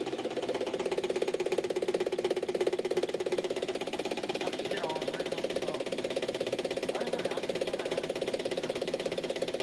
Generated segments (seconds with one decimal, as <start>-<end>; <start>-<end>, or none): 0.0-0.7; 3.1-3.7; 4.3-4.8; 8.4-9.6